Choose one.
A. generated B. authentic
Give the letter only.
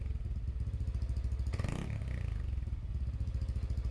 B